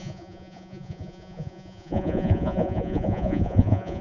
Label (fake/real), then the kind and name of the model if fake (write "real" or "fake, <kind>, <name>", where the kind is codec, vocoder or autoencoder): fake, vocoder, Vocos